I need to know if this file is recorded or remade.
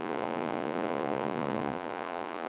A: remade